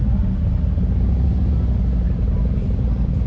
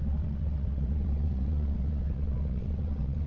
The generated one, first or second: second